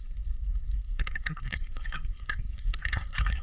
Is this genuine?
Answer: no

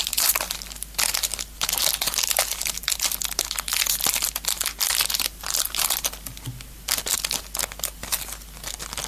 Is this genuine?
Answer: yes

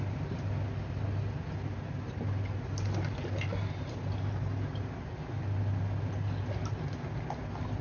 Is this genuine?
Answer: yes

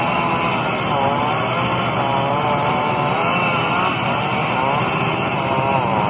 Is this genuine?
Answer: yes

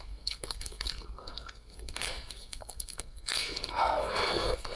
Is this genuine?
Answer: no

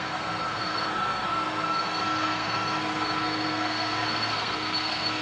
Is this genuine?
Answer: no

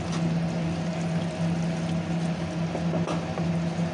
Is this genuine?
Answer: yes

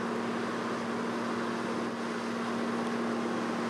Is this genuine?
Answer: yes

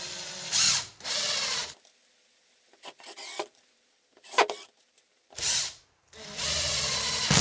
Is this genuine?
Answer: yes